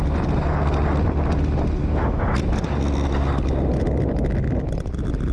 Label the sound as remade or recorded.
recorded